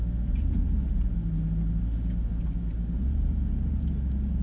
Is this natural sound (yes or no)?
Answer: yes